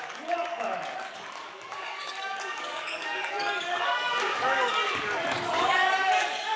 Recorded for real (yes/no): no